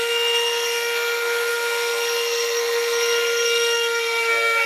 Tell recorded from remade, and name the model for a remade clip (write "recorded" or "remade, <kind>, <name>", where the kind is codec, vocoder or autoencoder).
remade, codec, SNAC